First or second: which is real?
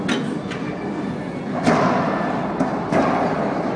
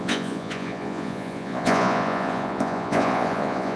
first